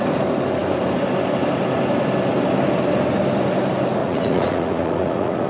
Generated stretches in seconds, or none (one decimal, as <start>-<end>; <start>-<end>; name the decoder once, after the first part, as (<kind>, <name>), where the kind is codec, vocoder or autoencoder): 4.0-5.5 (vocoder, Vocos)